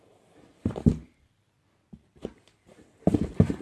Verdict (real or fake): real